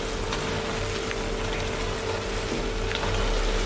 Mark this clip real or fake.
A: real